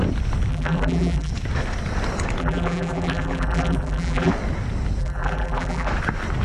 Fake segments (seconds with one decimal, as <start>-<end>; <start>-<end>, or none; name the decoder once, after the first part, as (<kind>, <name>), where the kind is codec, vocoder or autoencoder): 0.5-1.3 (vocoder, BigVGAN v2); 2.4-4.3; 5.0-5.9